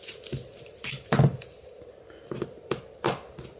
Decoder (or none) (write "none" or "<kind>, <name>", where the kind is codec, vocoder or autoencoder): vocoder, BigVGAN v2